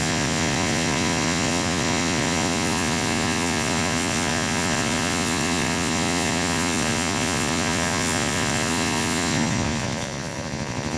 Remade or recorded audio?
remade